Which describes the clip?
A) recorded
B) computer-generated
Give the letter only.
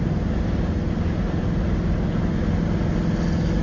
A